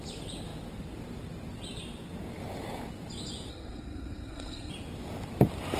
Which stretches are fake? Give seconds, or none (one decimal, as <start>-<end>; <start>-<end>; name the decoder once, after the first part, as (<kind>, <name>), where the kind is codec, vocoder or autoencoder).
3.5-4.7 (codec, SNAC)